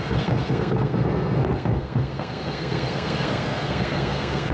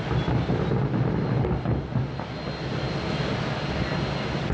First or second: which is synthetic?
first